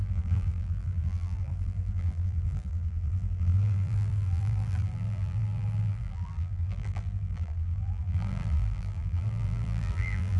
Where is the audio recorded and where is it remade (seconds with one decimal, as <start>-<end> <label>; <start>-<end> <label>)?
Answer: 0.0-10.4 remade